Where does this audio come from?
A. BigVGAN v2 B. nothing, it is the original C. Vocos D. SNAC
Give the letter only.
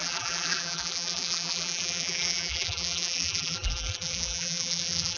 A